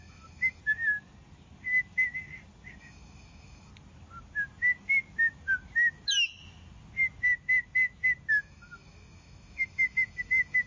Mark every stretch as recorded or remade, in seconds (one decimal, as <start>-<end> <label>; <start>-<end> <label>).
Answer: 0.0-0.6 remade; 0.6-2.8 recorded; 2.8-3.7 remade; 3.7-8.3 recorded; 8.3-10.7 remade